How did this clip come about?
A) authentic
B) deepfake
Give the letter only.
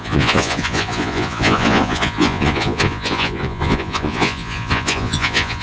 B